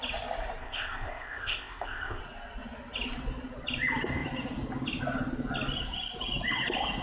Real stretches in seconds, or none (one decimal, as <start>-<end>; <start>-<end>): 0.0-0.6; 2.2-7.0